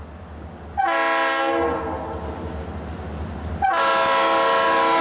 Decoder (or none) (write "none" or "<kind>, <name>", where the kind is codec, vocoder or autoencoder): none